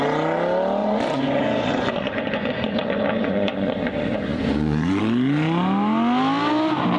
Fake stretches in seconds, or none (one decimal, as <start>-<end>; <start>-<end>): 0.8-5.0